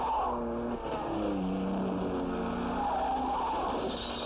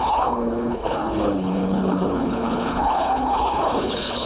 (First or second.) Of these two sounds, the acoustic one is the first